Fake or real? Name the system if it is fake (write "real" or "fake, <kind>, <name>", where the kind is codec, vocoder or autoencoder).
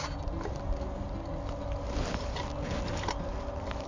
real